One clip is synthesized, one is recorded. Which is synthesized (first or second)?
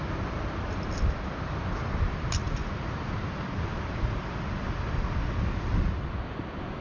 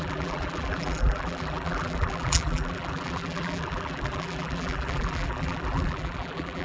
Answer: second